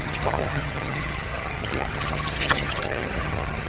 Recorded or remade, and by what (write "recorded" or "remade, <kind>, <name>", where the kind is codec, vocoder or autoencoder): remade, vocoder, HiFi-GAN